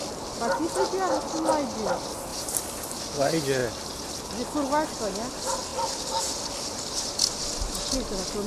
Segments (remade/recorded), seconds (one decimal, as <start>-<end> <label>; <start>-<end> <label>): 0.0-2.3 recorded; 2.3-3.0 remade; 3.0-8.5 recorded